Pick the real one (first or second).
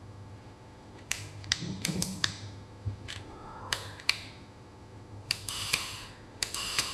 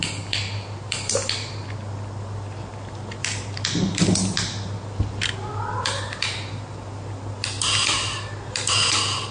second